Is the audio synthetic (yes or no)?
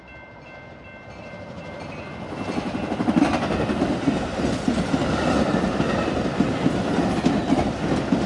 no